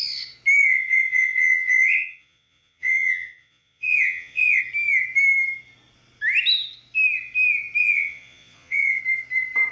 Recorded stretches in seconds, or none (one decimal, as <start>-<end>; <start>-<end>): 0.0-0.7; 4.6-7.8; 9.0-9.7